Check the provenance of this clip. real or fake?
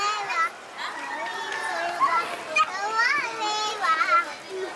real